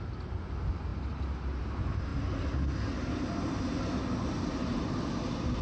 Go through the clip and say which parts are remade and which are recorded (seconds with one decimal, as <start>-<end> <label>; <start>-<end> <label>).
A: 0.0-0.9 recorded; 0.9-1.6 remade; 1.6-5.6 recorded